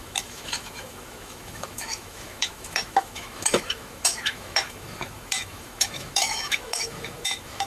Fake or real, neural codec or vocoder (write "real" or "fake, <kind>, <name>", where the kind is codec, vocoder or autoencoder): fake, autoencoder, DAC-VAE